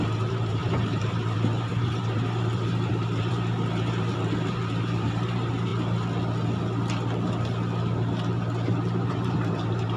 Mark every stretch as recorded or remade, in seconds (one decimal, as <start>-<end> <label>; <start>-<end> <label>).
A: 0.0-5.7 remade; 5.7-9.1 recorded; 9.1-10.0 remade